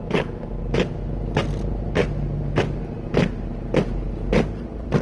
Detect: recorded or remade recorded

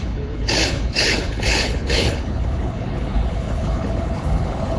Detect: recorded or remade remade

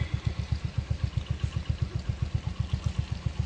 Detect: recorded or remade recorded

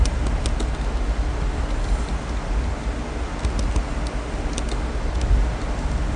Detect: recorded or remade recorded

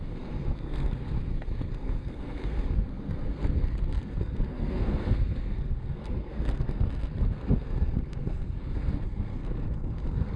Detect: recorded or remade remade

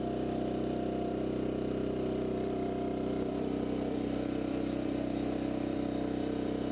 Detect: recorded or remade remade